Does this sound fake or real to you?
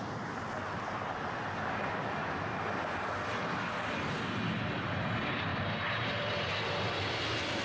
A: real